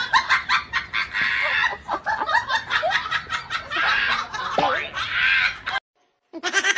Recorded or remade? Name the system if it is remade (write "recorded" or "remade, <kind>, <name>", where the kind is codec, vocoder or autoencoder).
recorded